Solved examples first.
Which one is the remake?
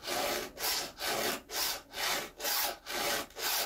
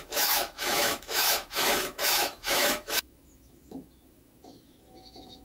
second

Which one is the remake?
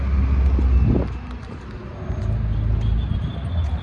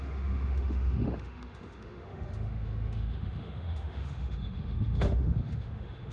second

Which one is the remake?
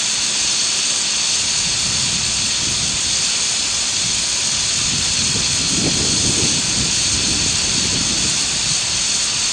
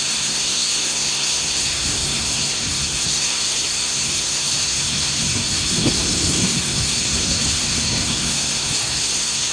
second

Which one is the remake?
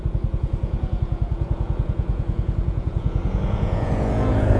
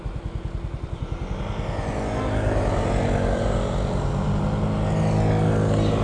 first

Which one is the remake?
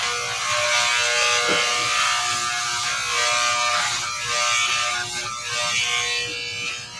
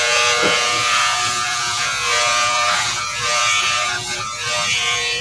second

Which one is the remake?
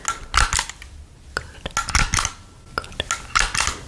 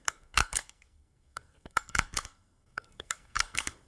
second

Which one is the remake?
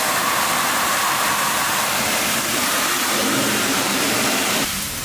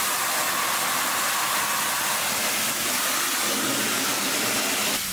first